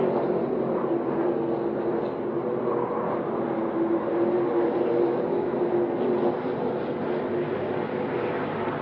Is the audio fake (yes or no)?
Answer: no